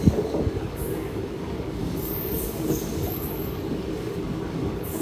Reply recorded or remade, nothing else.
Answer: remade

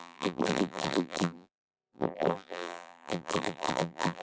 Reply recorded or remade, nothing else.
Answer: remade